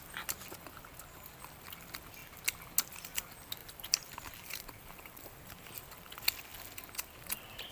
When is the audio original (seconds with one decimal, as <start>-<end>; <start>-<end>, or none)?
0.0-3.6; 5.8-7.7

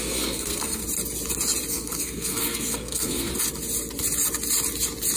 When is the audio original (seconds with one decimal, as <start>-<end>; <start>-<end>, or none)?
0.8-1.7; 3.3-5.2